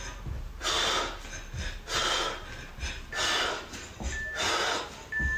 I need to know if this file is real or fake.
real